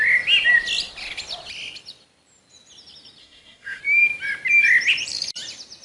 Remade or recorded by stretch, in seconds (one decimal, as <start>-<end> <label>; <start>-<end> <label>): 0.0-3.2 recorded; 3.2-3.8 remade; 3.8-5.8 recorded